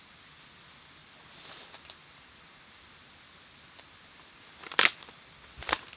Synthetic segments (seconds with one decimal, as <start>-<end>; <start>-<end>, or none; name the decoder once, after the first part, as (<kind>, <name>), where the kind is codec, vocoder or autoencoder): none